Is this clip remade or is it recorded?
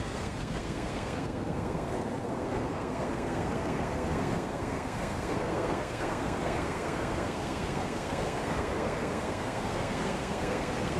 remade